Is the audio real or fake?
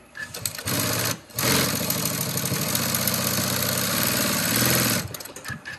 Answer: real